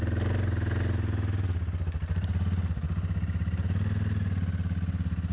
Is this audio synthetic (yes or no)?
no